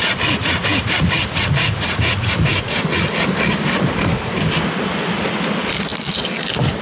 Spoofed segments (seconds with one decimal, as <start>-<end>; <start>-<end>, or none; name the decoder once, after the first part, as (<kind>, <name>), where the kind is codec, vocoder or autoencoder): none